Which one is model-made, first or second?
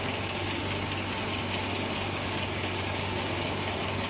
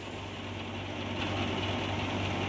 first